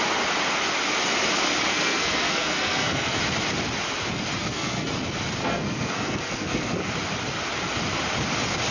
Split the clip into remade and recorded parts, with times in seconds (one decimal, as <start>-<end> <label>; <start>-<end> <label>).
0.0-1.7 recorded; 1.7-3.2 remade; 3.2-4.4 recorded; 4.4-4.9 remade; 4.9-5.4 recorded; 5.4-6.9 remade; 6.9-8.7 recorded